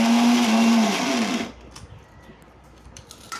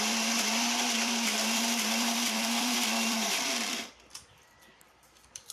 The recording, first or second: first